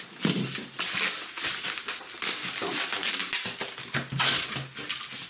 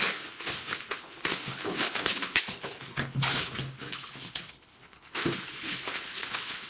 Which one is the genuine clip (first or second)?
first